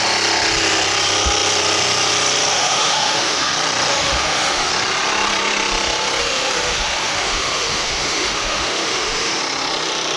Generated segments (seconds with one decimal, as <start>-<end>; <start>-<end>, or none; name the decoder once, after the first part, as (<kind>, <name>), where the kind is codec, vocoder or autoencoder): 2.5-3.5 (autoencoder, DAC-VAE); 3.9-4.7; 6.2-9.4